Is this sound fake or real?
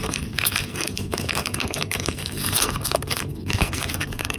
fake